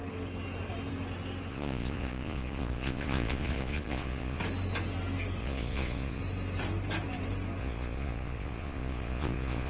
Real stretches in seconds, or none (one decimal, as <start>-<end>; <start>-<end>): 0.0-1.5; 4.4-5.4; 6.2-7.6

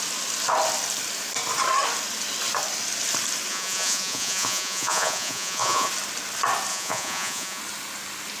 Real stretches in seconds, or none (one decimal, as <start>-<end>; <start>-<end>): 0.0-3.5; 5.9-6.7; 7.6-8.4

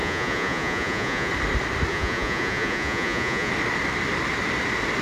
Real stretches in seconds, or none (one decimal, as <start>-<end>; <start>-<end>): 1.3-1.9; 3.5-5.0

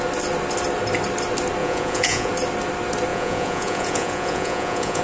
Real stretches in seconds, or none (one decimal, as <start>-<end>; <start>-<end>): 0.0-1.6; 2.3-3.1